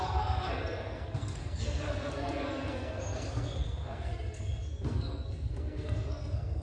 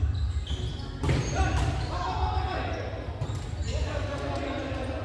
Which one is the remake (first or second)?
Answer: first